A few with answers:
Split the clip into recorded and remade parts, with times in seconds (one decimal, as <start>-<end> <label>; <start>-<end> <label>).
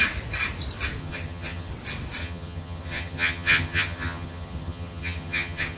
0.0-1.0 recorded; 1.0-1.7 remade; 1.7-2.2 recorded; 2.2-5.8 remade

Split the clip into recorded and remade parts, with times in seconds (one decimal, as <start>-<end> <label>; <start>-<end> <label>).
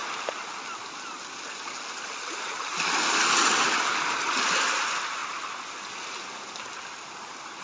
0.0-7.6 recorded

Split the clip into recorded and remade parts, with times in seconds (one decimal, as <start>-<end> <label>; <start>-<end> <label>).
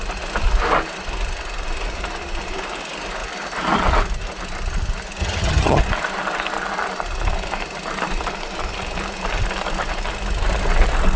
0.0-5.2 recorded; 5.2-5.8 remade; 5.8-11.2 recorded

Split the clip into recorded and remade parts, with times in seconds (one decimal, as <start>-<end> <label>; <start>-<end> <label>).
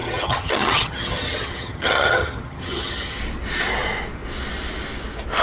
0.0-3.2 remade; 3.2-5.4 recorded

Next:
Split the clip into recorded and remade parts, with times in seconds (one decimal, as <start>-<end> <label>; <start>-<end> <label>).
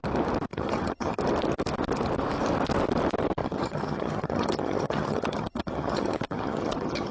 0.0-0.5 recorded; 0.5-1.2 remade; 1.2-3.4 recorded; 3.4-7.1 remade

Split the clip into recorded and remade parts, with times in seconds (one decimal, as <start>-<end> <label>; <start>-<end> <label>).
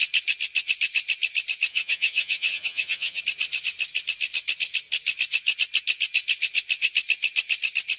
0.0-1.7 recorded; 1.7-3.2 remade; 3.2-8.0 recorded